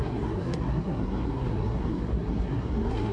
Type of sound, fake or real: fake